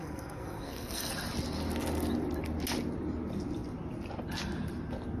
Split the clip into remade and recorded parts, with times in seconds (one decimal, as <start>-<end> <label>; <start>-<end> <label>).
0.0-1.1 remade; 1.1-5.2 recorded